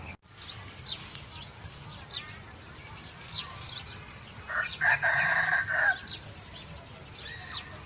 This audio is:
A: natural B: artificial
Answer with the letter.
A